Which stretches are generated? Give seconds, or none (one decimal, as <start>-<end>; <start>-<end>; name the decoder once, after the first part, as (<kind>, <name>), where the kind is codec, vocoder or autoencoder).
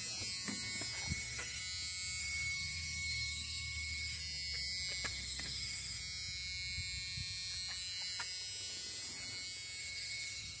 1.1-1.6 (codec, SNAC); 2.2-4.2; 5.1-6.0; 9.8-10.6